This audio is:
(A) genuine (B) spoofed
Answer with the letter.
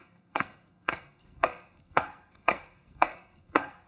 B